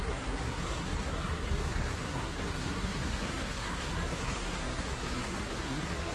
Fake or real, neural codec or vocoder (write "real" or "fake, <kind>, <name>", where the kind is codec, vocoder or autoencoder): fake, codec, SNAC